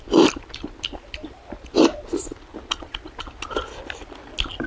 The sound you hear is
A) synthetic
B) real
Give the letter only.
B